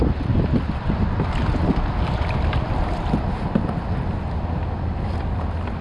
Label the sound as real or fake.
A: real